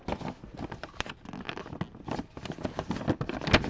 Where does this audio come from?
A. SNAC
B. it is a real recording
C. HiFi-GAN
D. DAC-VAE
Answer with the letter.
B